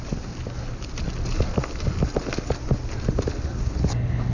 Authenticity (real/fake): real